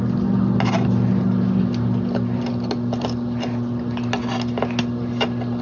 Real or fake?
real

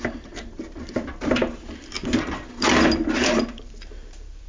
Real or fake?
fake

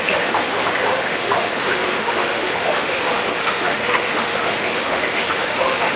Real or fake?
fake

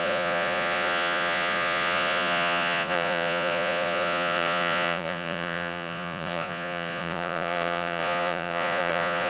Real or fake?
fake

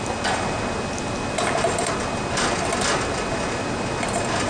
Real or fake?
real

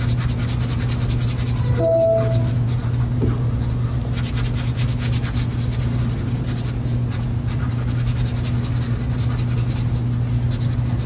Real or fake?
real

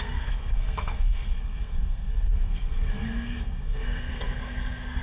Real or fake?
fake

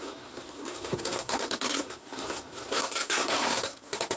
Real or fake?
fake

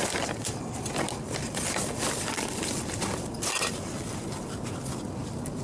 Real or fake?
fake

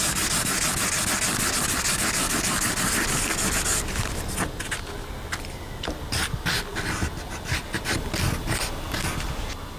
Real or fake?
real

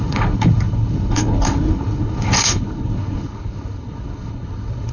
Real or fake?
fake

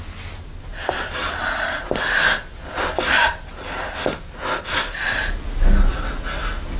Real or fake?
real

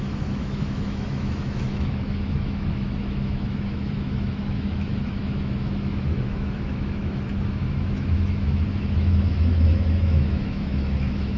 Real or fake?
fake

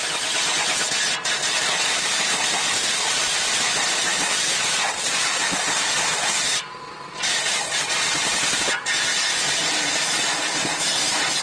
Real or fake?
real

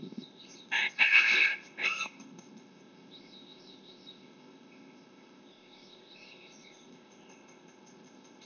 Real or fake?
fake